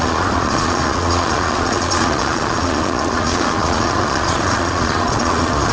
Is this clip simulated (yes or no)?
yes